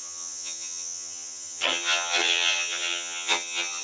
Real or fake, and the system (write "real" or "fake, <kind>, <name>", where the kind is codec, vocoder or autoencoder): fake, vocoder, HiFi-GAN